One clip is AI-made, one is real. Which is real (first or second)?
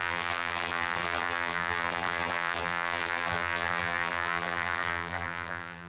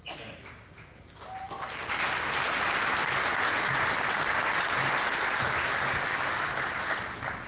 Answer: second